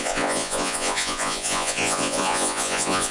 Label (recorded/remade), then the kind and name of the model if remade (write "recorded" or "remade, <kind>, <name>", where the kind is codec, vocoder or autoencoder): remade, vocoder, Vocos